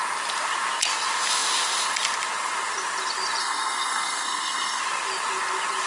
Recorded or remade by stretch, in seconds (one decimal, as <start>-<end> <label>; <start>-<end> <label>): 0.0-3.4 recorded; 3.4-4.8 remade; 4.8-5.9 recorded